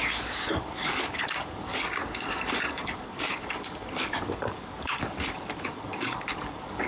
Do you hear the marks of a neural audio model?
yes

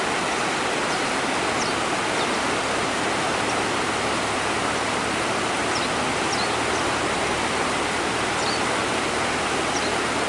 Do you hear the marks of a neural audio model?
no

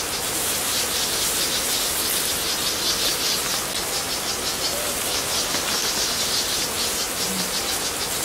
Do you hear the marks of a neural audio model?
no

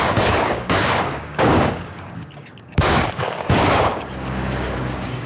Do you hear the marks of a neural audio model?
yes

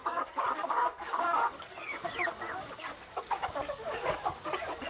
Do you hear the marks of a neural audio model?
yes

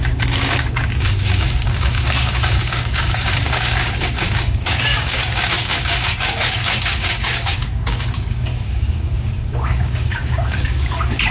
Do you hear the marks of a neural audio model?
yes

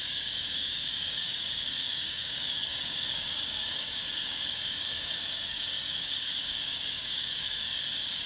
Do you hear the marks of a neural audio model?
yes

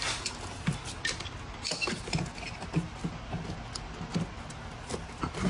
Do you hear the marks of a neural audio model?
no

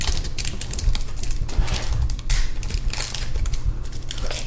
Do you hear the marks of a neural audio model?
no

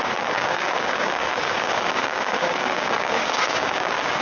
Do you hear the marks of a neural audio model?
yes